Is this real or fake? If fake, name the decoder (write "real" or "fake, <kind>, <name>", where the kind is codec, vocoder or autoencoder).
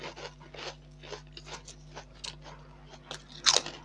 real